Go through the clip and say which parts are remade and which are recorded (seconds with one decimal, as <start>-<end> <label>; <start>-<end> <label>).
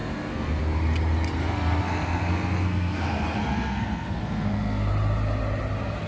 0.0-0.6 remade; 0.6-1.4 recorded; 1.4-4.9 remade; 4.9-6.1 recorded